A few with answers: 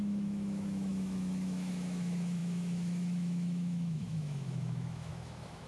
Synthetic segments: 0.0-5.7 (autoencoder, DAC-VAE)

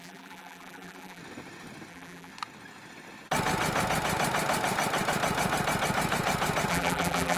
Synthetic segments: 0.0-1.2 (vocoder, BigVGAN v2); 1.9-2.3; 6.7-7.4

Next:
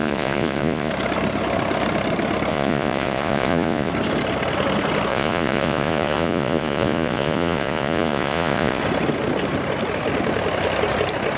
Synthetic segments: 0.0-0.9 (vocoder, Vocos); 2.5-3.9; 5.1-8.8

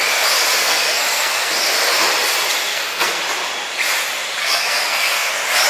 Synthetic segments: 0.6-1.5 (codec, SNAC); 2.7-3.2; 4.4-5.3

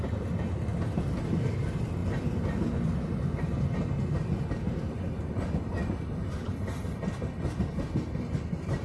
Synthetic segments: none